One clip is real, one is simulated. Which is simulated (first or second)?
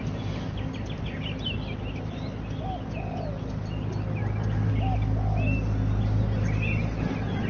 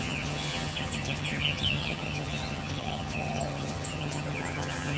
second